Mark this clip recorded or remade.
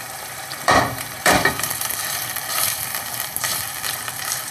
remade